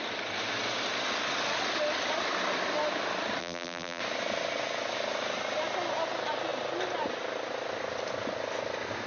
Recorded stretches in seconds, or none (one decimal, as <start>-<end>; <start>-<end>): 0.0-3.4; 4.0-9.1